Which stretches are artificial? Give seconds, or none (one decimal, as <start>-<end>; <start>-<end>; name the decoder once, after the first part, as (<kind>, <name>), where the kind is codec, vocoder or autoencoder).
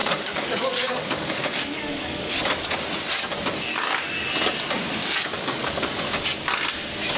0.0-2.7 (codec, DAC); 3.7-4.3; 5.0-5.9